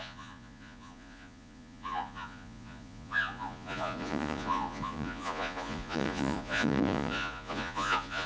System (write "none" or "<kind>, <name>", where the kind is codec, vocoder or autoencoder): vocoder, Vocos